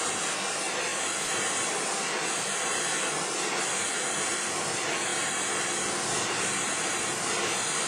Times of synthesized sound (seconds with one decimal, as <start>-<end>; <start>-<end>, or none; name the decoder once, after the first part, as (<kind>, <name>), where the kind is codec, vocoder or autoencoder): 0.9-4.4 (vocoder, BigVGAN v2)